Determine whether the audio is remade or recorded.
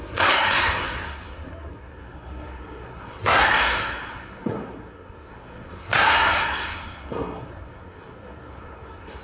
remade